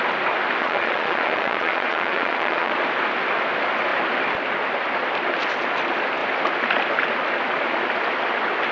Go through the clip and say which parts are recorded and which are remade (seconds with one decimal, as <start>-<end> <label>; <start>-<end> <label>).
0.0-0.6 recorded; 0.6-2.7 remade; 2.7-8.7 recorded